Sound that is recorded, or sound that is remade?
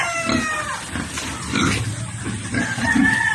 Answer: recorded